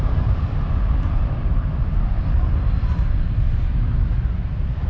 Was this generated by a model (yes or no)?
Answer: no